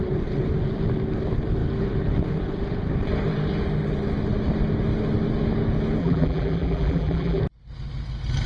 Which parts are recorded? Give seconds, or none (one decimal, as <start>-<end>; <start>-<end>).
0.0-6.0; 7.4-8.5